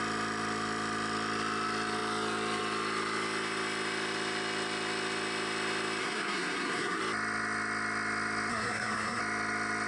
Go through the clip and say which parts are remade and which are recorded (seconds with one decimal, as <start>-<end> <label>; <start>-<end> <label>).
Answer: 0.0-6.0 recorded; 6.0-7.0 remade; 7.0-8.5 recorded; 8.5-9.2 remade; 9.2-9.9 recorded